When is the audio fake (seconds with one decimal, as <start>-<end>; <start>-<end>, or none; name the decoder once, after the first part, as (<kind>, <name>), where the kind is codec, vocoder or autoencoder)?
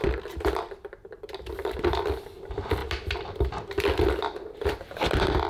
0.0-5.5 (vocoder, BigVGAN v2)